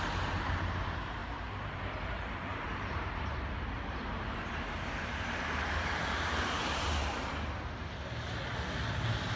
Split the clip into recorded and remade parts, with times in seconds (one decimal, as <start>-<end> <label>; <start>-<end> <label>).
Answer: 0.0-1.2 recorded; 1.2-1.8 remade; 1.8-2.5 recorded; 2.5-7.3 remade; 7.3-9.4 recorded